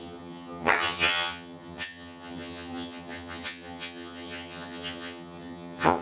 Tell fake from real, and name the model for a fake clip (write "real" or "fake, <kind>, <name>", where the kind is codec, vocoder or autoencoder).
fake, vocoder, HiFi-GAN